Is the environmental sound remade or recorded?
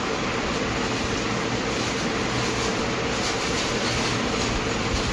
recorded